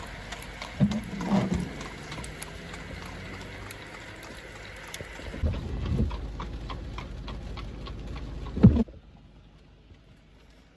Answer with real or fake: real